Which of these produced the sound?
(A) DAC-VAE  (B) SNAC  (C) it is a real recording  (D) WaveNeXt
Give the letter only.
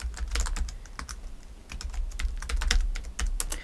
C